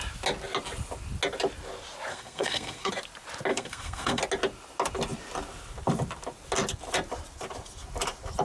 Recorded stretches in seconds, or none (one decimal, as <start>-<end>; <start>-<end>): 0.0-2.1; 2.9-3.5; 4.2-8.4